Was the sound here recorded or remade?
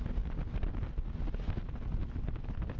recorded